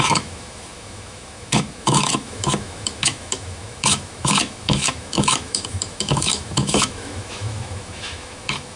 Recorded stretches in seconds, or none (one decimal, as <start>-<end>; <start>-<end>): none